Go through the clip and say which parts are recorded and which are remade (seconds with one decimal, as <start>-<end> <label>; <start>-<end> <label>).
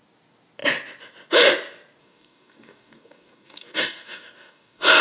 0.0-2.0 recorded; 2.0-5.0 remade